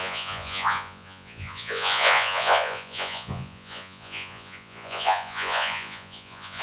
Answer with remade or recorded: remade